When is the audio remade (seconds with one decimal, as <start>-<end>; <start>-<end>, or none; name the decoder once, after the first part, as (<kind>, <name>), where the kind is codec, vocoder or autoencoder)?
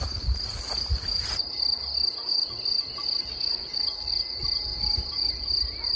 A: 0.9-1.5 (vocoder, BigVGAN v2)